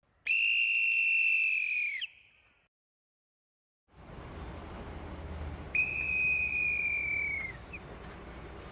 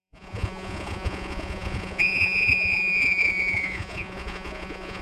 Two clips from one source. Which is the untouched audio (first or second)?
first